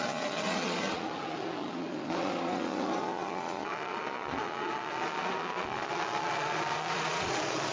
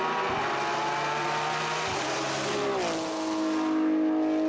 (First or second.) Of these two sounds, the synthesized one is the first